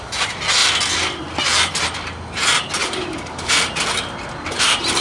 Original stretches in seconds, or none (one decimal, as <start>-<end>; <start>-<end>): 0.0-2.8; 3.5-5.0